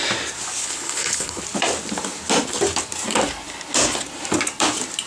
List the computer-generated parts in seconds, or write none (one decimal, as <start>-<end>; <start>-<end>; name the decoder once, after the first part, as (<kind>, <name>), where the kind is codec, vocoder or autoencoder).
0.6-1.4 (codec, HILCodec)